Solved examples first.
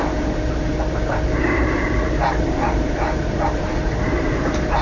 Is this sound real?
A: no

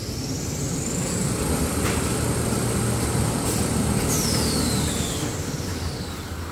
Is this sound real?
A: yes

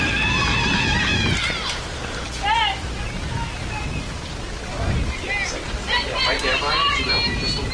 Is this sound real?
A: yes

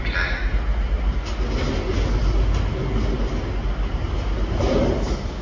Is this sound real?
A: yes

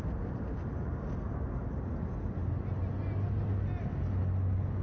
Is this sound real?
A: yes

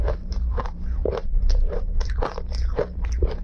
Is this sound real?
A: no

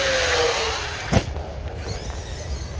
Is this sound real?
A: yes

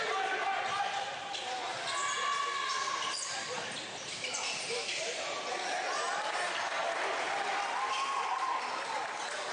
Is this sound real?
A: yes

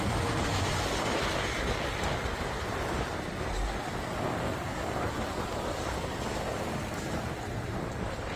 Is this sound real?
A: yes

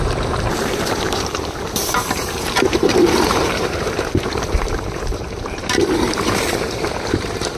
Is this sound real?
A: no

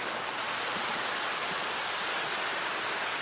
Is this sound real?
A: yes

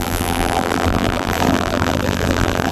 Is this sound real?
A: no